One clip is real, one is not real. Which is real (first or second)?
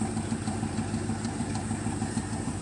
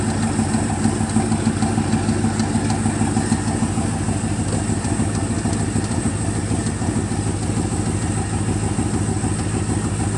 second